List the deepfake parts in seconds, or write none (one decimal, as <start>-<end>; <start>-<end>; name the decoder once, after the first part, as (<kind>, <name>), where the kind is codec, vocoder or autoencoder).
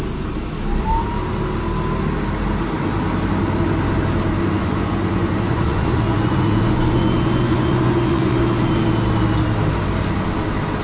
4.6-8.4 (vocoder, Vocos)